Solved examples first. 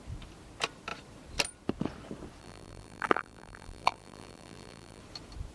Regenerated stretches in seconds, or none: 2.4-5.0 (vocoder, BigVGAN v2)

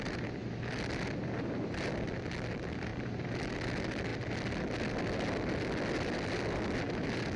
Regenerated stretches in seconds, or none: none